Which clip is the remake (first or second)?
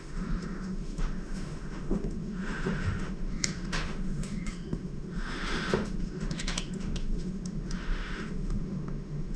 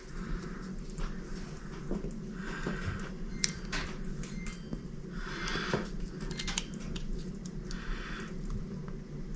first